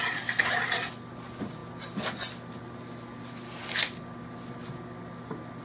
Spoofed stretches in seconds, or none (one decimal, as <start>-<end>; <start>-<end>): none